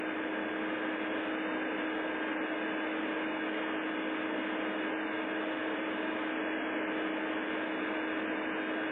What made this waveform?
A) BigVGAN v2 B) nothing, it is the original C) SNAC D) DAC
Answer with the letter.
B